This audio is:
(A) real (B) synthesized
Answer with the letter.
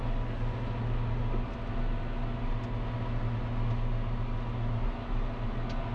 A